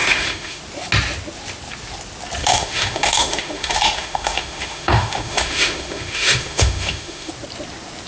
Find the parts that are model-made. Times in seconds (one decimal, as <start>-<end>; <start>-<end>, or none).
0.0-0.6; 2.4-7.3